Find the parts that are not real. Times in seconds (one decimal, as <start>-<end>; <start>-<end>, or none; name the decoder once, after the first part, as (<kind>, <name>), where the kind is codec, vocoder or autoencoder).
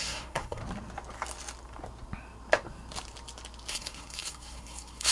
0.0-0.6 (codec, SNAC); 3.7-5.1